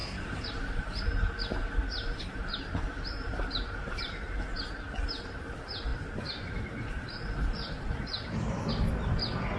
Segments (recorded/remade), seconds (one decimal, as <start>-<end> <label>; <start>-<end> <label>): 0.0-1.3 remade; 1.3-2.1 recorded; 2.1-4.0 remade; 4.0-5.9 recorded; 5.9-8.7 remade; 8.7-9.6 recorded